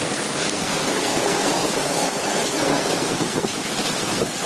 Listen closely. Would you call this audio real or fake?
fake